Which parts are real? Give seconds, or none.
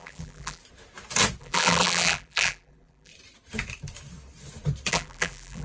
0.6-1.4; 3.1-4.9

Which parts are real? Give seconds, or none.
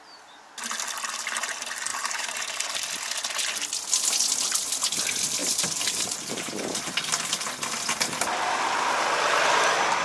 0.0-1.9; 2.5-5.4; 6.5-10.0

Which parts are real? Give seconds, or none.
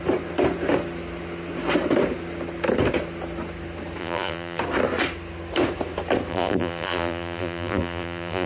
0.0-4.0; 4.6-6.3